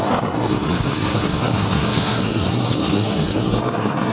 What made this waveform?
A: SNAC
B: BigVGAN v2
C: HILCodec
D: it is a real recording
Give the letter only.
A